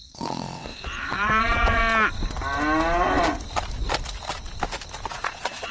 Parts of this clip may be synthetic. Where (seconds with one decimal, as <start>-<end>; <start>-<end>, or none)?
0.0-1.8; 5.1-5.7